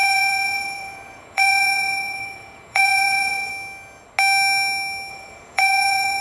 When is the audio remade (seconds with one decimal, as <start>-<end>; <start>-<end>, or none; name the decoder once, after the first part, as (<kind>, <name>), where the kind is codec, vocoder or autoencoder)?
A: 0.0-3.5 (vocoder, Vocos); 5.1-6.2